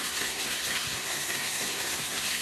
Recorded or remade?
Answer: remade